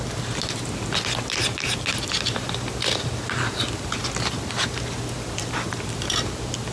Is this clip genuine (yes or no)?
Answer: yes